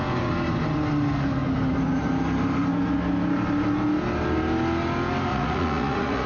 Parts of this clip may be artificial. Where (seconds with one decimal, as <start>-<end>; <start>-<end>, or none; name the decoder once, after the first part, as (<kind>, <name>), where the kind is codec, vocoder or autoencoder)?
5.3-6.3 (vocoder, Vocos)